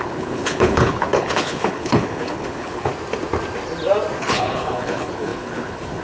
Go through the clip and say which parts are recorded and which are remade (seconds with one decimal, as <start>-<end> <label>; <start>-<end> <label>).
0.0-2.9 remade; 2.9-4.2 recorded; 4.2-6.0 remade